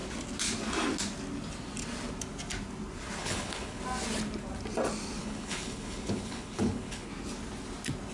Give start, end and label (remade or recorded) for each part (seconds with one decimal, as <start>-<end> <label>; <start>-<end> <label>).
0.0-3.2 recorded; 3.2-3.8 remade; 3.8-5.2 recorded; 5.2-7.1 remade; 7.1-8.1 recorded